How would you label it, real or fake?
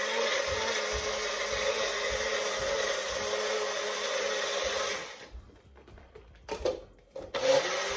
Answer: real